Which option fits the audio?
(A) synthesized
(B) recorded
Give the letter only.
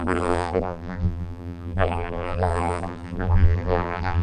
A